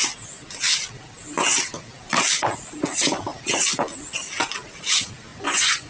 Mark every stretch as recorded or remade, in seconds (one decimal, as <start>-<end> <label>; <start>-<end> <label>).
0.0-5.3 recorded; 5.3-5.9 remade